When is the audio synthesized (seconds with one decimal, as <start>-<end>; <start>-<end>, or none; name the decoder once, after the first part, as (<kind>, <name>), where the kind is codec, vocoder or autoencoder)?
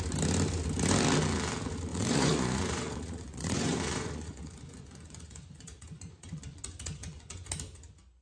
1.9-6.6 (vocoder, Vocos); 7.0-7.5